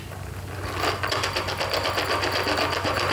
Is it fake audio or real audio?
real